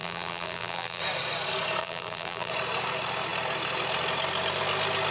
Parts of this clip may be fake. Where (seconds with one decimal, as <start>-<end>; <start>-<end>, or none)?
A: 0.0-1.0; 1.8-2.5